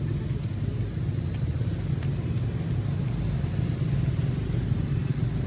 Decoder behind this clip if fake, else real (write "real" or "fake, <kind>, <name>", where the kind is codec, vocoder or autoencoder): real